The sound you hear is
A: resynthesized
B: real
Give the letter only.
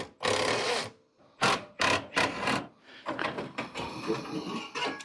B